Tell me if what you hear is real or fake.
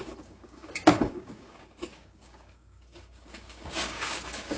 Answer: fake